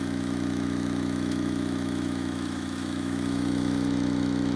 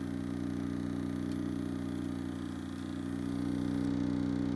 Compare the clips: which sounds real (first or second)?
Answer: second